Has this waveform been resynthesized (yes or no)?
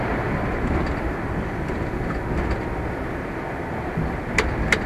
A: no